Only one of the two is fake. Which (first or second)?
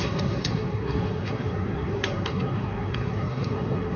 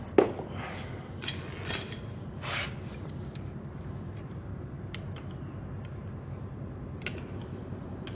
first